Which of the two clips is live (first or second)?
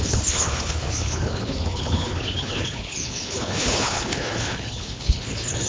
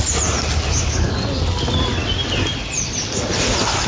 second